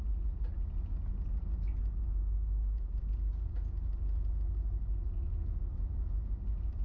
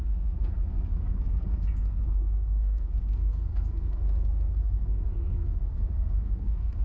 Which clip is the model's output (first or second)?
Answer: second